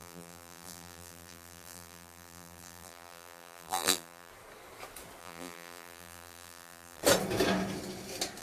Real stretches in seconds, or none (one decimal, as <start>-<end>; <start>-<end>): 4.3-5.2; 7.0-8.4